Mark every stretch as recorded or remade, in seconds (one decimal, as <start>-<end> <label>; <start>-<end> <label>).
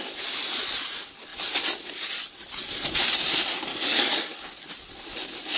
0.0-3.7 recorded; 3.7-4.6 remade; 4.6-5.6 recorded